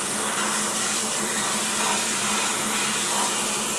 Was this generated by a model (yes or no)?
no